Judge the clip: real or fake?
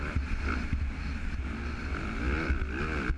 real